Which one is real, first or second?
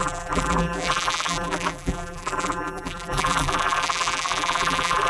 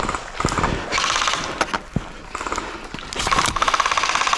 second